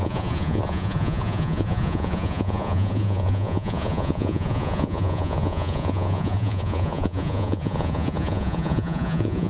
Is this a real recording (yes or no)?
no